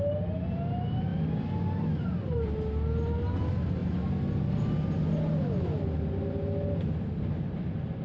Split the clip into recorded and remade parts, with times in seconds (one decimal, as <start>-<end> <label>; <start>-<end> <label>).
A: 0.0-8.0 recorded